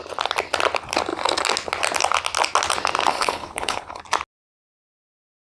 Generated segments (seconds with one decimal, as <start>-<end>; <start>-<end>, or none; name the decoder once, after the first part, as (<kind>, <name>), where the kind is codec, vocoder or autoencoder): 3.1-4.0 (codec, HILCodec)